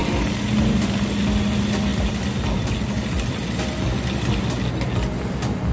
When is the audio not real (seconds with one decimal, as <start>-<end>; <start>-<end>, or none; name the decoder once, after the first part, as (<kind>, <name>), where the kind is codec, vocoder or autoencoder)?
none